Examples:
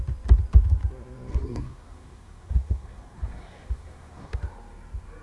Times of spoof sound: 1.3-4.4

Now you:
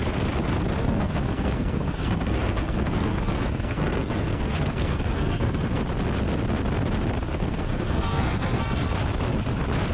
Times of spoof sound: 0.8-5.8; 7.3-8.6

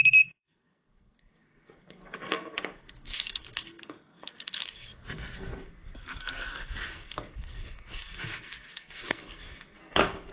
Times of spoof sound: 0.0-10.3